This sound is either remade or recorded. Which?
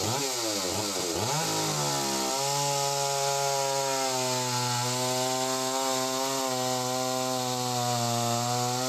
recorded